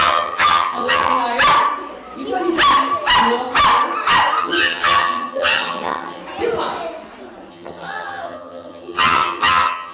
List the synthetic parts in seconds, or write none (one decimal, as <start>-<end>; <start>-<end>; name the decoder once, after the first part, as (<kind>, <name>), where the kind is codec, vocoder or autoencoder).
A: 0.0-1.2 (vocoder, HiFi-GAN); 4.4-6.2; 7.5-9.9